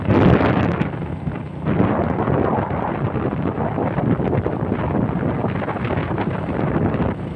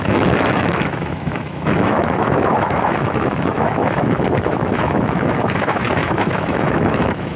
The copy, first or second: second